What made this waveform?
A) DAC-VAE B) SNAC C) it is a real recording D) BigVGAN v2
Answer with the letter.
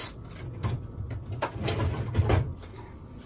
D